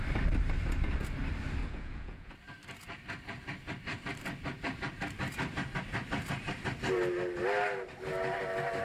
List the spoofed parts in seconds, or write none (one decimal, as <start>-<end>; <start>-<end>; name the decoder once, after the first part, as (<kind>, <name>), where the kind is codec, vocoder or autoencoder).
1.6-2.3 (vocoder, Vocos)